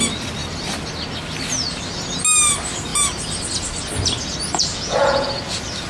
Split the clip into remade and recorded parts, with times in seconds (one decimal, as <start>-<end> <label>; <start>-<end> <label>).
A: 0.0-4.7 recorded; 4.7-5.3 remade; 5.3-5.9 recorded